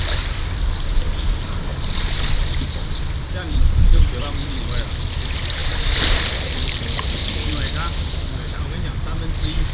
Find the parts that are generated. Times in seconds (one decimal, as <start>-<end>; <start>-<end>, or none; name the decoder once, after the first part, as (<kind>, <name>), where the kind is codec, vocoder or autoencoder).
1.7-4.6 (vocoder, BigVGAN v2); 5.6-7.0